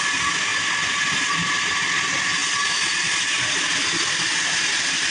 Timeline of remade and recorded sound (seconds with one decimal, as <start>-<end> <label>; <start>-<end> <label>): 0.0-5.1 recorded

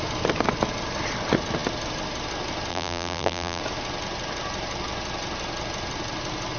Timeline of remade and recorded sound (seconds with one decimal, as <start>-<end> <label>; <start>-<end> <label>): 0.0-2.7 recorded; 2.7-3.6 remade; 3.6-6.6 recorded

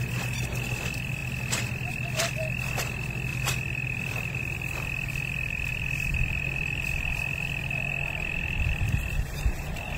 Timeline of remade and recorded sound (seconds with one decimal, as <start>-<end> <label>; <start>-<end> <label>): 0.0-3.3 recorded; 3.3-4.4 remade; 4.4-5.7 recorded; 5.7-9.0 remade; 9.0-10.0 recorded

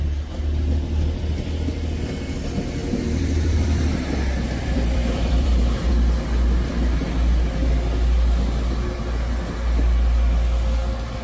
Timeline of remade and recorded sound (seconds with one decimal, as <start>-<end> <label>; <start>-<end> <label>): 0.0-2.8 recorded; 2.8-5.9 remade; 5.9-11.2 recorded

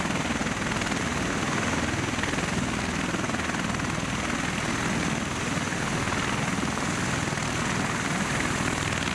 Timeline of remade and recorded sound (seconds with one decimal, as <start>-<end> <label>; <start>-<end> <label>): 0.0-9.1 recorded